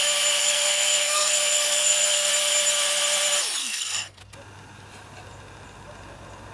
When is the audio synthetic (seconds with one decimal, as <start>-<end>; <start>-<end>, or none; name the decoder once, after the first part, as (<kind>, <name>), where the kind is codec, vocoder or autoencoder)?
0.4-2.3 (codec, SNAC); 3.6-4.2